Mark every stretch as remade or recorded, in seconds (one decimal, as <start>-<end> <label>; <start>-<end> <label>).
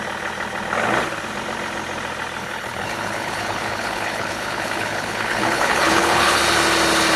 0.0-2.4 recorded; 2.4-6.4 remade; 6.4-7.2 recorded